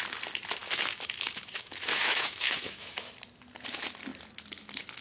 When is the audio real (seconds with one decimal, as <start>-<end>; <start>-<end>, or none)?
0.0-0.6; 3.1-5.0